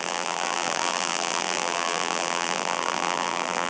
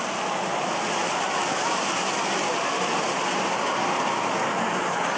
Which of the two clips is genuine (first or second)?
second